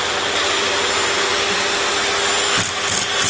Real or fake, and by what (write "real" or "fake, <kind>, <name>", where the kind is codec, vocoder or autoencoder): real